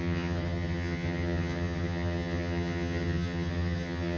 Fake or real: fake